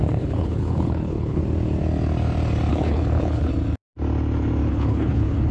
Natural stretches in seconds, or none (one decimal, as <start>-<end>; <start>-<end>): 1.4-2.7; 3.5-4.7